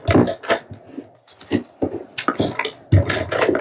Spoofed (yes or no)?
no